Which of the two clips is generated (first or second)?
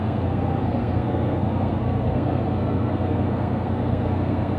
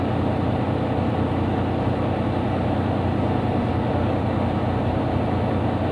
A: first